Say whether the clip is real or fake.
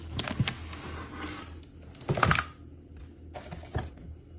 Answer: real